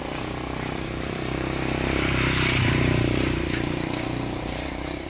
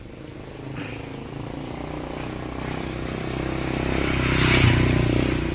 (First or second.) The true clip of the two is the second